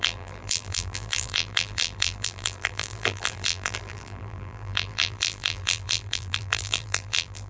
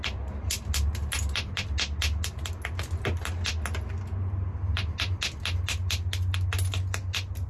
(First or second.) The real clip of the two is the second